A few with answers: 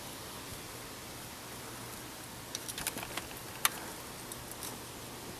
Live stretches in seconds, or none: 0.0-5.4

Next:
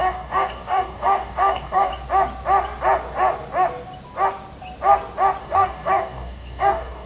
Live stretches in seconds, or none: 1.9-5.4

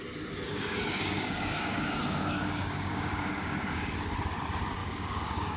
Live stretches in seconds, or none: 0.0-0.5; 3.9-4.8

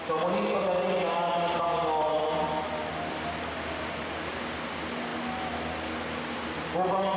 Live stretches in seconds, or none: 0.0-7.2

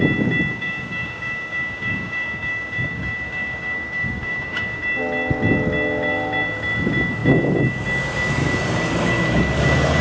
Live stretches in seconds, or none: 0.0-0.5; 4.8-10.0

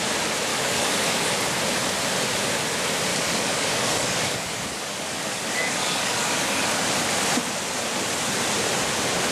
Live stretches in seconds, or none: 0.0-0.5; 1.4-3.1; 6.7-9.3